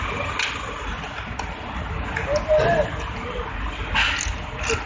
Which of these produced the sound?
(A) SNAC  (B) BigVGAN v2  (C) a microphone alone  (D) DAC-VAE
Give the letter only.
C